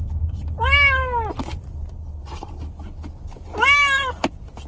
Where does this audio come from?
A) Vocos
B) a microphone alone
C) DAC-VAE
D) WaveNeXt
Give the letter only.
B